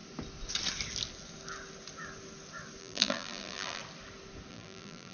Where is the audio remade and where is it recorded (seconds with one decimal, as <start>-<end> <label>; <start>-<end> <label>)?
0.0-2.8 recorded; 2.8-3.8 remade; 3.8-4.5 recorded; 4.5-5.1 remade